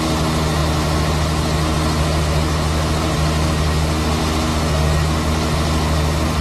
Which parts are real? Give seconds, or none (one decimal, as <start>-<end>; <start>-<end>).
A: 0.0-6.4